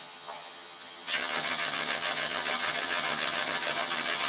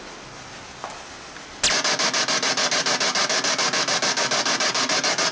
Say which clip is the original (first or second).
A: second